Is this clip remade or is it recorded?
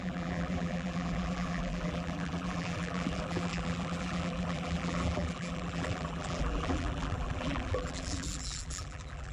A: remade